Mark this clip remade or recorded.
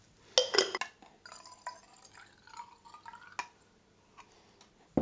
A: recorded